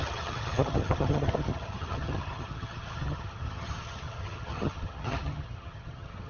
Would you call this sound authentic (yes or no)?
no